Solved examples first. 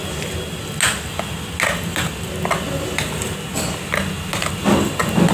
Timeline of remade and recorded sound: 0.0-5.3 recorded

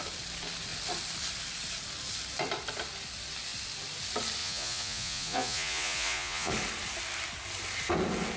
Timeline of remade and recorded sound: 0.0-4.4 recorded; 4.4-6.5 remade; 6.5-8.4 recorded

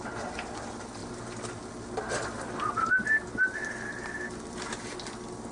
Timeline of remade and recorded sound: 0.0-5.5 recorded

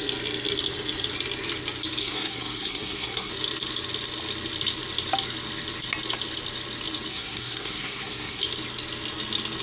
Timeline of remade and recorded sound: 0.0-2.0 recorded; 2.0-3.3 remade; 3.3-7.1 recorded; 7.1-8.4 remade; 8.4-9.6 recorded

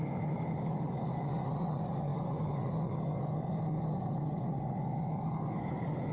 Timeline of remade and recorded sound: 0.0-2.1 recorded; 2.1-2.6 remade; 2.6-6.1 recorded

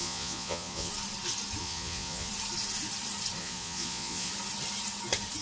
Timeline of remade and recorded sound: 0.0-0.9 remade; 0.9-1.6 recorded; 1.6-2.3 remade; 2.3-3.4 recorded; 3.4-4.3 remade; 4.3-5.4 recorded

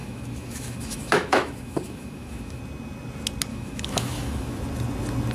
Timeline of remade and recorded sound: 0.0-2.6 remade; 2.6-3.5 recorded; 3.5-4.6 remade; 4.6-5.3 recorded

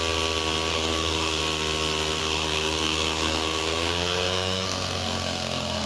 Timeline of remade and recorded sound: 0.0-0.7 recorded; 0.7-1.4 remade; 1.4-2.2 recorded; 2.2-5.9 remade